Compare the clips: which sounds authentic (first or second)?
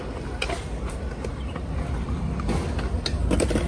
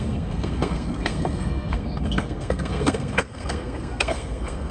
first